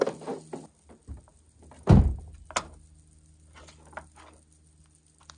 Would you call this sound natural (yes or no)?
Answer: yes